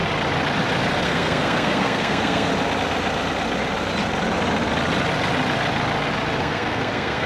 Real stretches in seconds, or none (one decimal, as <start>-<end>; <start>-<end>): 0.0-1.0; 2.5-6.4